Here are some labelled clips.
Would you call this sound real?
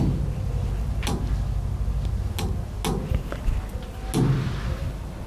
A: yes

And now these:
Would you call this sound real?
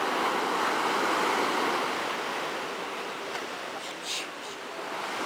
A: yes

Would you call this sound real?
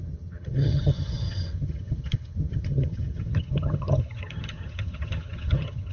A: no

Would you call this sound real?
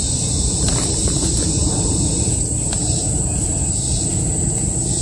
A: no